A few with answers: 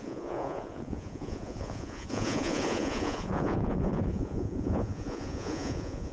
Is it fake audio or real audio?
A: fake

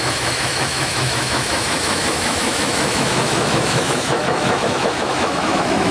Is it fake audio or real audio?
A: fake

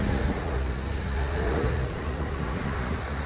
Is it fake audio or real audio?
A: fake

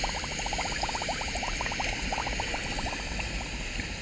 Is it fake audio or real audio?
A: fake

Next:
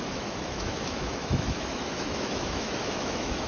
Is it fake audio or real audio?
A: fake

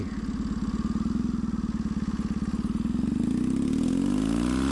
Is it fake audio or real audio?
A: real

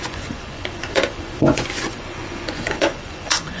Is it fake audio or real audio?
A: fake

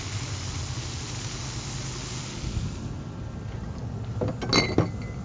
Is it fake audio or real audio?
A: real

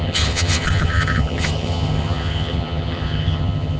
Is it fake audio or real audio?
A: fake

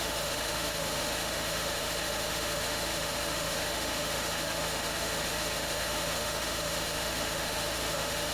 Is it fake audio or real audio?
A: fake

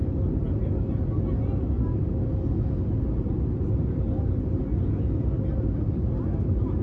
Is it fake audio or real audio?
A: real